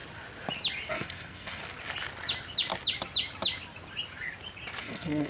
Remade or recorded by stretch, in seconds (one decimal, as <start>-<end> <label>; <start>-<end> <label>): 0.0-0.9 recorded; 0.9-1.6 remade; 1.6-4.8 recorded; 4.8-5.3 remade